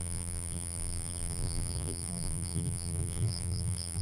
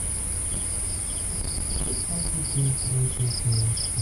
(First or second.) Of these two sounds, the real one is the second